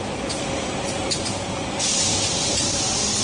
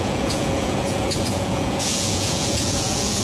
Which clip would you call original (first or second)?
first